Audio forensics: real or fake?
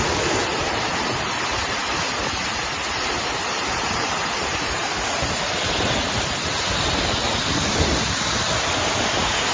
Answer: real